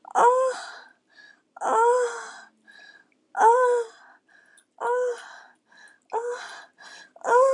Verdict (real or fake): real